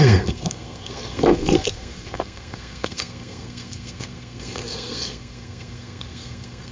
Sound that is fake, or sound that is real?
fake